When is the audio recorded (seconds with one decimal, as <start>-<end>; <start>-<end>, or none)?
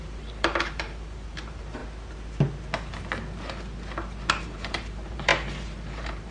1.8-4.3